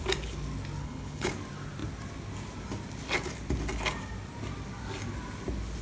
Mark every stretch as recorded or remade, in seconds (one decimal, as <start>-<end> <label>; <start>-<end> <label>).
0.0-0.8 recorded; 0.8-1.3 remade; 1.3-5.8 recorded